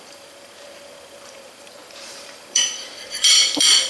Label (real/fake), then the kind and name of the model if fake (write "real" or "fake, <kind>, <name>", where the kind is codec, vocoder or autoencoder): fake, vocoder, BigVGAN v2